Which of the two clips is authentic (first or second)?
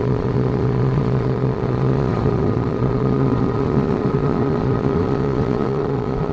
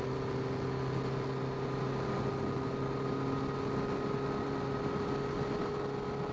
second